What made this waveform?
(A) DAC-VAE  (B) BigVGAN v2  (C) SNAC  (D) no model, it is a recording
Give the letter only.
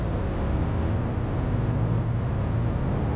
D